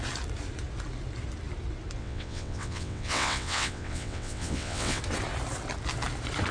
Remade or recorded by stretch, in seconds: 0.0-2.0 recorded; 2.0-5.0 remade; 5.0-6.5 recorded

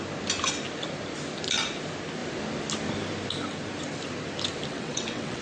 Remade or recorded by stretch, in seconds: 0.0-4.7 recorded; 4.7-5.4 remade

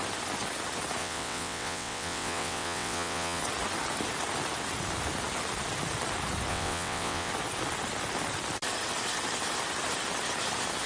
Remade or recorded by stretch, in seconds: 0.0-1.0 recorded; 1.0-3.4 remade; 3.4-6.5 recorded; 6.5-7.3 remade; 7.3-10.9 recorded

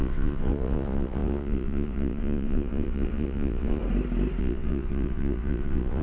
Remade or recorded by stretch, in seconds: 0.0-3.8 remade; 3.8-4.4 recorded; 4.4-6.0 remade